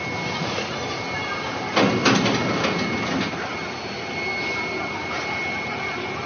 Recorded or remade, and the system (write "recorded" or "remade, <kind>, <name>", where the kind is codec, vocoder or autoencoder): recorded